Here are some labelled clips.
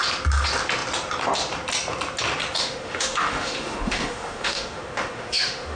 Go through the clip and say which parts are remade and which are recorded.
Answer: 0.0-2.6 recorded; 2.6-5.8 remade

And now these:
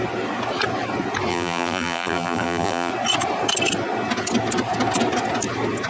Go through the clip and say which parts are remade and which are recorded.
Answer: 0.0-1.3 recorded; 1.3-2.9 remade; 2.9-5.9 recorded

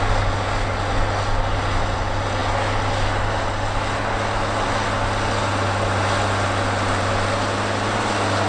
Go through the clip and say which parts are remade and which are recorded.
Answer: 0.0-8.5 recorded

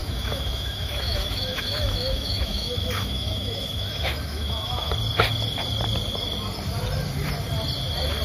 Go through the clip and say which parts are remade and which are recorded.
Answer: 0.0-4.9 remade; 4.9-8.2 recorded